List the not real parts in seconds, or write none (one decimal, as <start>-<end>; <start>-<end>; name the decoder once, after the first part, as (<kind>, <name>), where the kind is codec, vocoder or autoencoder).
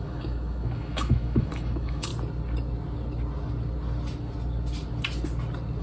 0.0-2.1 (autoencoder, DAC-VAE)